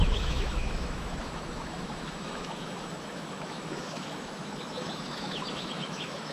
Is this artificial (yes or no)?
yes